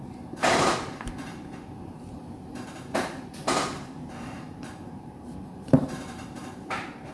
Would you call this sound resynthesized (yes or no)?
yes